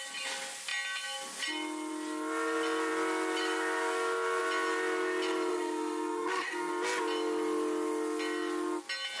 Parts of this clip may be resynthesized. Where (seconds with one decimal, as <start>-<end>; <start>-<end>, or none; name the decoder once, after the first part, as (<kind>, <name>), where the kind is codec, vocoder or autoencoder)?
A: 5.5-6.7 (codec, SNAC)